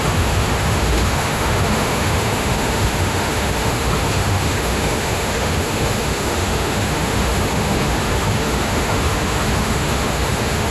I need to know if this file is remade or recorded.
remade